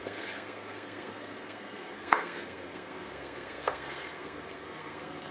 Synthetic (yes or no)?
yes